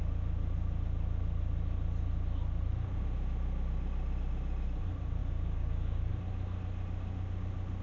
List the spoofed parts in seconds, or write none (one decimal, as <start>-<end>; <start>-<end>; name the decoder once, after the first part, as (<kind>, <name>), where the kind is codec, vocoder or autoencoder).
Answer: 5.2-6.1 (codec, DAC)